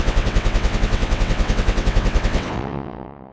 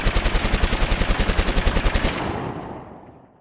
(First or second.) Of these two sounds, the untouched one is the second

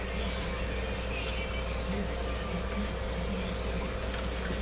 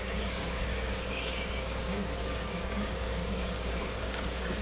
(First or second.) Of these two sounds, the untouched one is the first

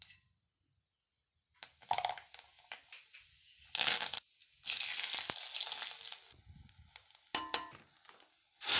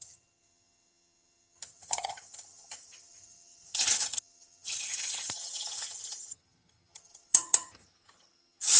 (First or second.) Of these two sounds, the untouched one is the first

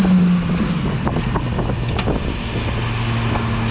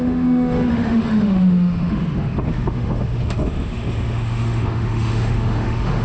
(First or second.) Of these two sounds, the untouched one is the first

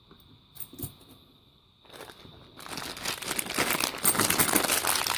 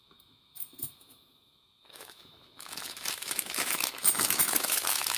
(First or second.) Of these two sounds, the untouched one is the first